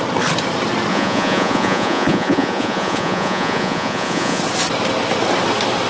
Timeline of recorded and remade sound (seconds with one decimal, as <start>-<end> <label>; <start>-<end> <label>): 0.0-0.9 recorded; 0.9-4.4 remade; 4.4-5.9 recorded